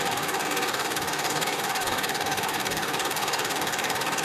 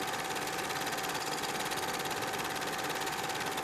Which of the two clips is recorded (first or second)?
second